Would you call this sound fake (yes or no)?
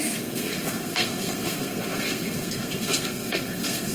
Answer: yes